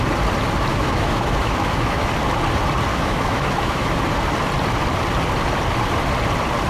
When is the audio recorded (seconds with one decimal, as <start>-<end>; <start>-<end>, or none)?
0.0-0.7; 2.1-2.9; 4.0-6.7